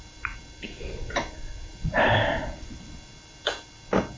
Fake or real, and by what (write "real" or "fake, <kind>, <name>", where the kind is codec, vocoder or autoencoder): fake, vocoder, BigVGAN v2